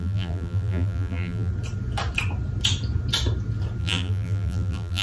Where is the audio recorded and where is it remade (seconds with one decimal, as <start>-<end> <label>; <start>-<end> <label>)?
0.0-1.5 remade; 1.5-3.8 recorded; 3.8-5.0 remade